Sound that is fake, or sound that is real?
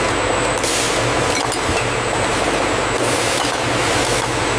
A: real